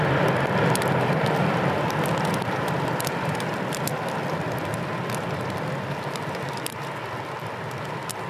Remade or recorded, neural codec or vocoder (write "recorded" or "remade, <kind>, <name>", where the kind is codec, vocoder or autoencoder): recorded